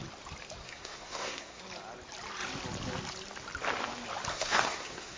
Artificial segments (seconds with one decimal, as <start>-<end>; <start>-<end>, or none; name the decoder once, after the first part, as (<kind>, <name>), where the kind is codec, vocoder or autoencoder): 0.6-1.6 (codec, SNAC); 4.3-5.2